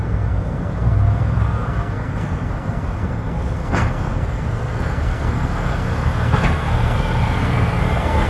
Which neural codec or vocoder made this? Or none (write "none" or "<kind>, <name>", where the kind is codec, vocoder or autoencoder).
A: codec, SNAC